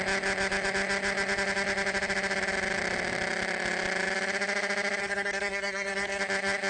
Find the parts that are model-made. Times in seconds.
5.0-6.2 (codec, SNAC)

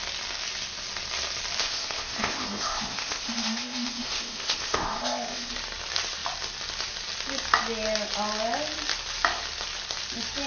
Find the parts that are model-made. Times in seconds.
1.6-5.5 (codec, ZipCodec)

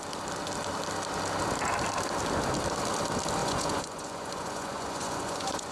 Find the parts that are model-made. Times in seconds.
3.4-5.7 (vocoder, Vocos)

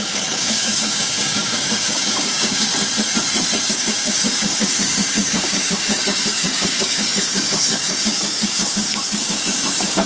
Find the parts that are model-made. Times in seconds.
0.0-2.7 (codec, DAC); 3.7-10.1

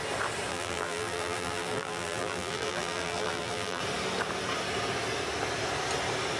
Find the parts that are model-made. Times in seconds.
0.5-3.8 (vocoder, BigVGAN v2)